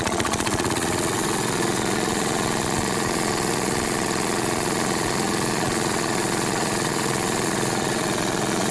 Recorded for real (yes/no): no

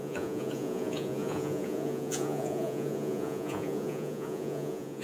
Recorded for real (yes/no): no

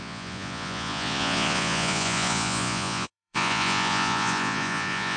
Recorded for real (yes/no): no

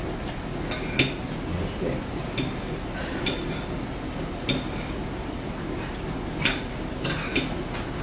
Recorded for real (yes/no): yes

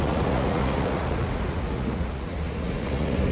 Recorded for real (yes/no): no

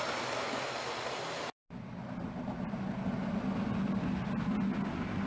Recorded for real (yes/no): yes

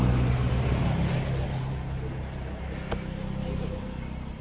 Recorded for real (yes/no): yes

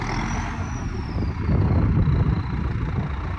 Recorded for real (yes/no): yes